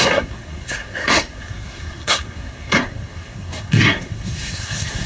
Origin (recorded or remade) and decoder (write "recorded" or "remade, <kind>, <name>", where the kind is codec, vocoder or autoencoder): remade, codec, SNAC